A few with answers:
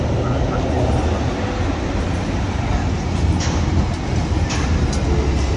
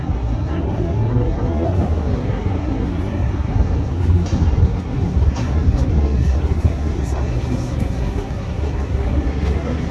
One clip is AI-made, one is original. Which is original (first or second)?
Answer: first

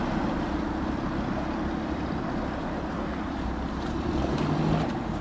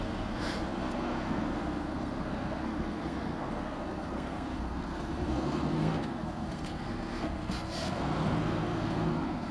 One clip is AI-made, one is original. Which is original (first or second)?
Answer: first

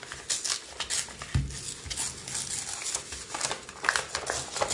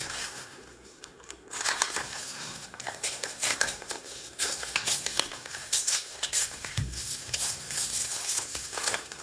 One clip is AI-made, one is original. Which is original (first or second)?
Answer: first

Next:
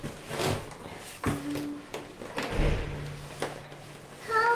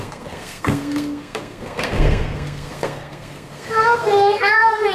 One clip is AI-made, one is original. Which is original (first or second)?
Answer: first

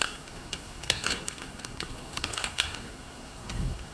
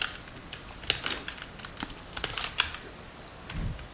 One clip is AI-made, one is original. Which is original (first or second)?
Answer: second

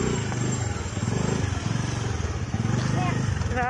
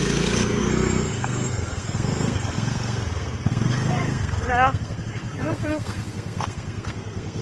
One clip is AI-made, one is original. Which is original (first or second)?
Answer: first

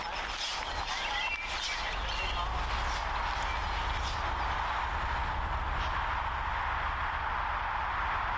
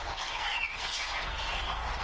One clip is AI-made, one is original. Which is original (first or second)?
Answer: first